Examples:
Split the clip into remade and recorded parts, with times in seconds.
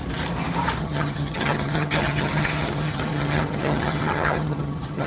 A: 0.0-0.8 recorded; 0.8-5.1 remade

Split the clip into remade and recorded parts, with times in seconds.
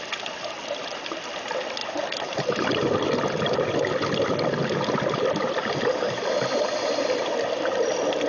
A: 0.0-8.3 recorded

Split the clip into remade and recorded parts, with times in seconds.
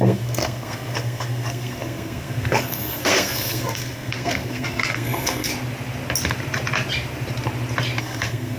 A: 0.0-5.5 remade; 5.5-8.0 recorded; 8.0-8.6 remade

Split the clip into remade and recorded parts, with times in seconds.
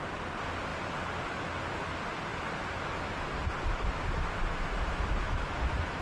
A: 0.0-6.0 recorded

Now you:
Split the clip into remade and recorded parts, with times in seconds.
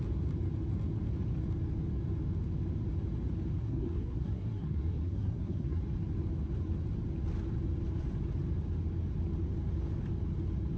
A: 0.0-3.6 recorded; 3.6-5.8 remade; 5.8-10.8 recorded